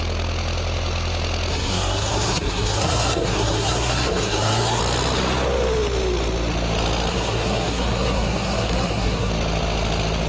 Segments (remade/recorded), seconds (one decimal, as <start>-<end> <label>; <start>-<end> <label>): 0.0-1.5 recorded; 1.5-4.8 remade; 4.8-7.1 recorded; 7.1-9.3 remade; 9.3-10.3 recorded